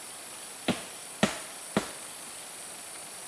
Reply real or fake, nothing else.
real